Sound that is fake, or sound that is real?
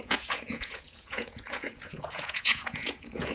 fake